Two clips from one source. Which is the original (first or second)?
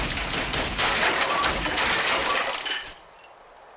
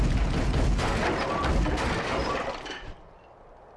second